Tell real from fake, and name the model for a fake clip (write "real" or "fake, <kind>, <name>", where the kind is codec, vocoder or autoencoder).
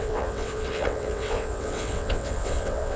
fake, vocoder, WaveNeXt